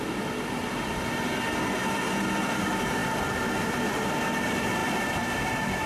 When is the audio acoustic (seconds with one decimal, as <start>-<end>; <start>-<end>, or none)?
3.0-3.6